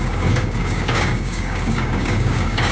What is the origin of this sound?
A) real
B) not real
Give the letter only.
B